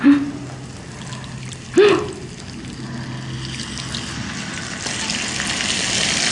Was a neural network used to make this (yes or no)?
no